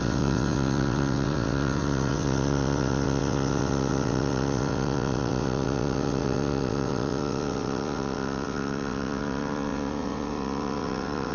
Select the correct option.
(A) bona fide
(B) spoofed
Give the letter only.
B